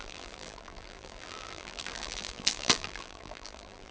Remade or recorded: remade